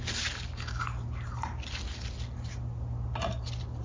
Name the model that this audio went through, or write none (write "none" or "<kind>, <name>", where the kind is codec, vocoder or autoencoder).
none